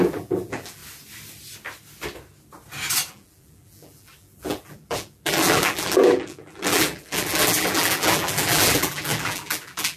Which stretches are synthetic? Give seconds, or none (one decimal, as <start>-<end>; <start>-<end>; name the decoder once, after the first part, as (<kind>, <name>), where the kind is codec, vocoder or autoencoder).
0.0-0.8 (vocoder, BigVGAN v2); 3.1-10.0